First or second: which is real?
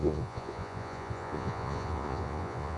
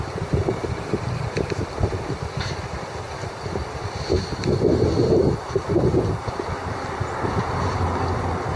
second